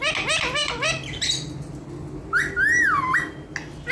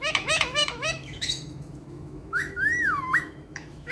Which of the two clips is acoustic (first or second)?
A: first